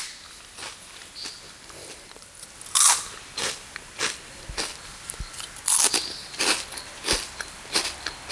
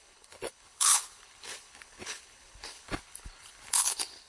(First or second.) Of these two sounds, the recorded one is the first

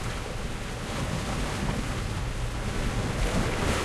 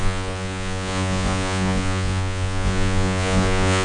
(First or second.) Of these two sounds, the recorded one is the first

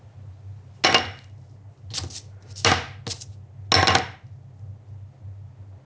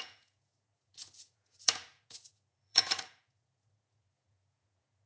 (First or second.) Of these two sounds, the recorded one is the first